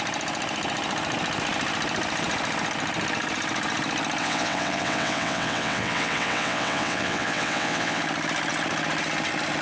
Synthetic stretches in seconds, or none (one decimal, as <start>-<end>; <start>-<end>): 4.2-8.0